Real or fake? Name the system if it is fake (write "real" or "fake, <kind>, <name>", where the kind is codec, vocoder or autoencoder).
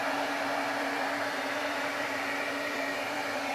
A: fake, vocoder, BigVGAN v2